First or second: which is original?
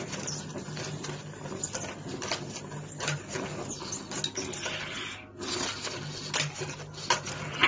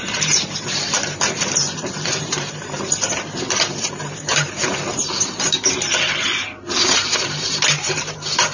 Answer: first